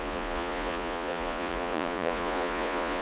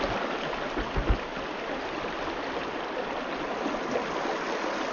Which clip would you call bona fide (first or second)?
second